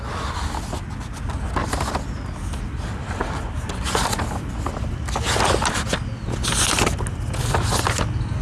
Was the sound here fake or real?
real